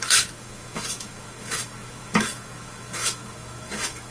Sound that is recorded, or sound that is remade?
remade